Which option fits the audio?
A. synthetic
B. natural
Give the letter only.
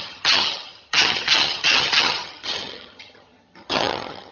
A